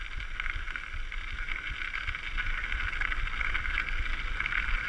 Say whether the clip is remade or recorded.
recorded